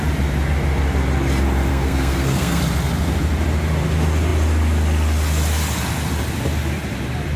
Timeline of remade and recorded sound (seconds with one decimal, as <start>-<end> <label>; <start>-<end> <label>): 0.0-1.7 recorded; 1.7-2.6 remade; 2.6-7.4 recorded